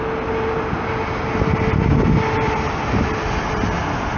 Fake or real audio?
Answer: real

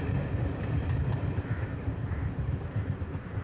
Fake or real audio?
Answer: real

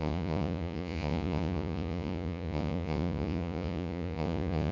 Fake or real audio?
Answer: fake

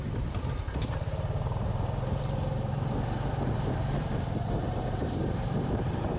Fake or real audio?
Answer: fake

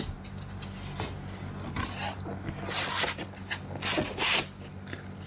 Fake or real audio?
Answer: real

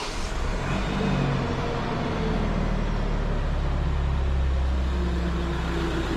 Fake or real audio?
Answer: real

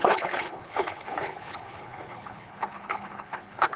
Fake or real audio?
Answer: fake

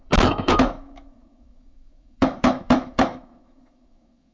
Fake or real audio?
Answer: fake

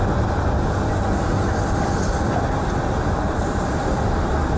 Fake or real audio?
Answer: fake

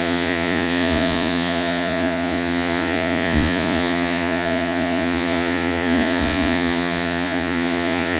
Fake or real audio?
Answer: fake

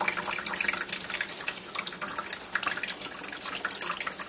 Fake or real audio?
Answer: real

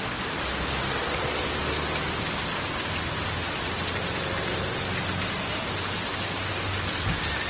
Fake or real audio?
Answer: real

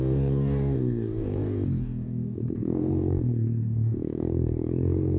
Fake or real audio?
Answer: fake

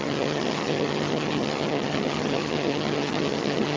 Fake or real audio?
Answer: fake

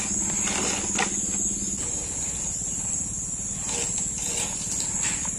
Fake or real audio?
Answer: real